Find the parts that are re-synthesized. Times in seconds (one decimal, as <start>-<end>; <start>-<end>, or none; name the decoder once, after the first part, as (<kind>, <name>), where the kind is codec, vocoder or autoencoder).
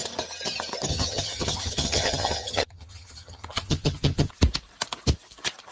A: 0.9-4.3 (vocoder, HiFi-GAN)